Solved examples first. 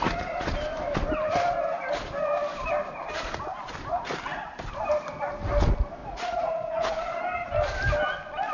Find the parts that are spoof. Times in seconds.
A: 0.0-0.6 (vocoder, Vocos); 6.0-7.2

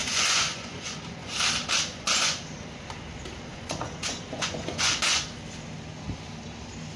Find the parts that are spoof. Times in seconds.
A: 0.0-1.3 (vocoder, Vocos); 1.9-2.4; 3.5-5.2

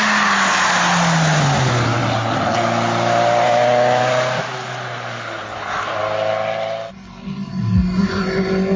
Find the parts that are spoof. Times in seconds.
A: none